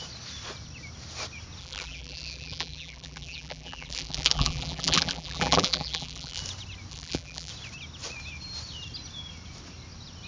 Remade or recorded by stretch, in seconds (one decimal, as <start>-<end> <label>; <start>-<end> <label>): 0.0-1.6 recorded; 1.6-6.4 remade; 6.4-6.9 recorded; 6.9-7.5 remade; 7.5-10.3 recorded